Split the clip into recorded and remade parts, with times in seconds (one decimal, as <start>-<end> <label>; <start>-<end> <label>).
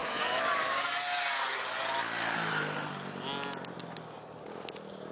0.0-0.8 remade; 0.8-5.1 recorded